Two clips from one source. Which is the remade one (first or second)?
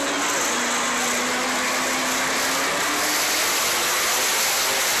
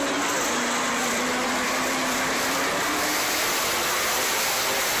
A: second